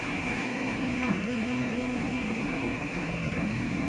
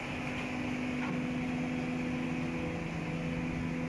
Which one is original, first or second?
second